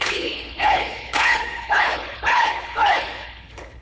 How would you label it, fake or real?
fake